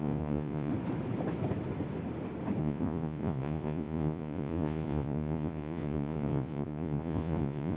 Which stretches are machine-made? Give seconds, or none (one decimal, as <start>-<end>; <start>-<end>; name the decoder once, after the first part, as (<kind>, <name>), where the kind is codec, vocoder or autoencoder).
0.0-0.7 (vocoder, Vocos); 2.6-7.8